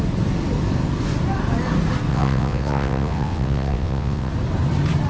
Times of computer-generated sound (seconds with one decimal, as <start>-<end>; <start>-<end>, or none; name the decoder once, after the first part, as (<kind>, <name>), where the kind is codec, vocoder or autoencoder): 2.1-4.3 (vocoder, WaveNeXt)